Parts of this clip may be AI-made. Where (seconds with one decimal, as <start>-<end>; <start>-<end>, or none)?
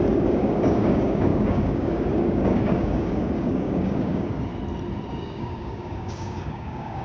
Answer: 0.0-4.5; 5.1-7.0